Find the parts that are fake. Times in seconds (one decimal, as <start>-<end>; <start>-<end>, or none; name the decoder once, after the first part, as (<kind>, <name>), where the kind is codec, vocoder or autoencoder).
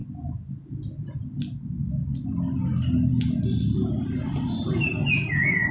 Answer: 5.0-5.7 (vocoder, Vocos)